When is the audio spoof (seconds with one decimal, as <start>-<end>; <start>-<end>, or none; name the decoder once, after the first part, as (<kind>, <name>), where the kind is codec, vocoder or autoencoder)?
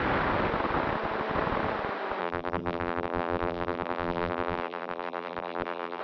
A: 2.2-6.0 (vocoder, BigVGAN v2)